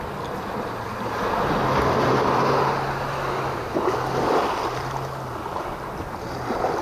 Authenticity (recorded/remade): recorded